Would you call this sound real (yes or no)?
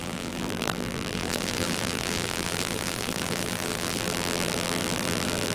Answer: no